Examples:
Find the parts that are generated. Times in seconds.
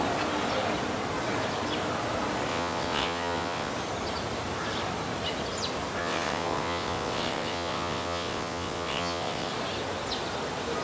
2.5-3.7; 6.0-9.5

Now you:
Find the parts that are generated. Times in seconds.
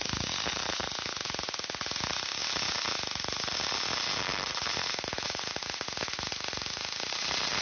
none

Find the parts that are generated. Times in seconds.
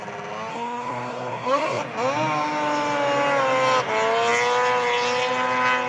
0.5-1.8